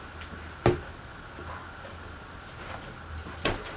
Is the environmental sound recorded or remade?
recorded